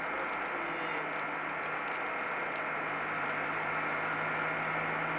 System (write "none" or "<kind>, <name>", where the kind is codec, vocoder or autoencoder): none